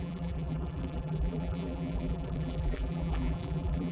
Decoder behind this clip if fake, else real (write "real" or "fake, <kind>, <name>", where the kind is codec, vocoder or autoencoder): fake, vocoder, BigVGAN v2